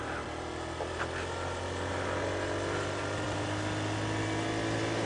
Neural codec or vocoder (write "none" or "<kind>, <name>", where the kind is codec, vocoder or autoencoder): none